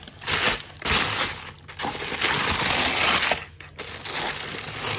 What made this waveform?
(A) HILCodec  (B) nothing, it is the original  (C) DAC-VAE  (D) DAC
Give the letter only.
B